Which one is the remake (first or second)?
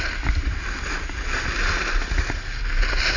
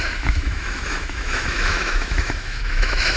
second